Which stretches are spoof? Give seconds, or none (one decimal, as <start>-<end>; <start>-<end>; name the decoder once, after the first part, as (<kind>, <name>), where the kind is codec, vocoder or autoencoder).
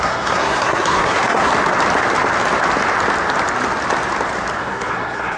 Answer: 0.0-1.5 (codec, SNAC); 4.6-5.4